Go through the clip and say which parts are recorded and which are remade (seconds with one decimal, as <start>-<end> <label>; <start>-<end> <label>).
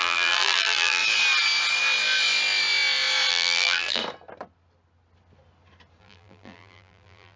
0.0-1.0 remade; 1.0-3.3 recorded; 3.3-4.0 remade; 4.0-6.0 recorded; 6.0-7.4 remade